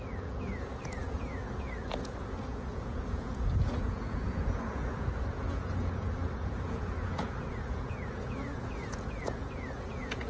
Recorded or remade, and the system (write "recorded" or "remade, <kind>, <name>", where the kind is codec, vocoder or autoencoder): remade, vocoder, Vocos